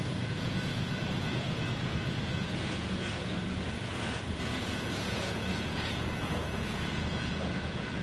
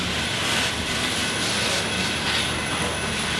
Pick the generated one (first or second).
first